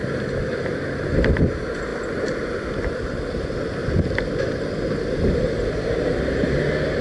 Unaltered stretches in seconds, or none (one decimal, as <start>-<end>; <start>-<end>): 0.0-7.0